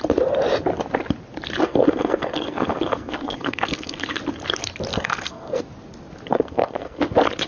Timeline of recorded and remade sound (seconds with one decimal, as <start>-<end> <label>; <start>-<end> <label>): 0.0-1.6 recorded; 1.6-4.2 remade; 4.2-4.9 recorded; 4.9-5.6 remade; 5.6-6.3 recorded; 6.3-7.0 remade; 7.0-7.5 recorded